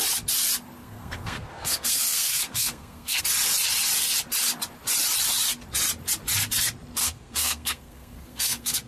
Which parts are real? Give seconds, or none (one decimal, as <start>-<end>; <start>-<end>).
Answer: 0.0-0.8; 3.2-7.0